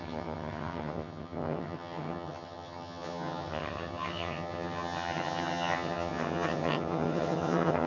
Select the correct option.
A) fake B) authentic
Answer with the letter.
A